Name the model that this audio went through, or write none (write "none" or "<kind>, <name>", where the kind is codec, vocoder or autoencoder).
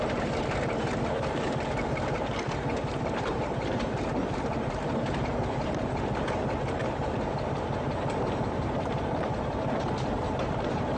vocoder, BigVGAN v2